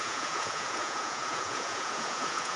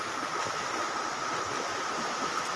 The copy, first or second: first